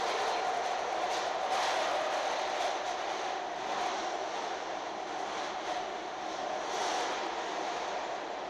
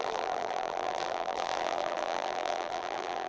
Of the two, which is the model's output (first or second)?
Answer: second